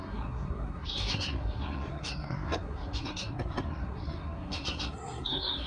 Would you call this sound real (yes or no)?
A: no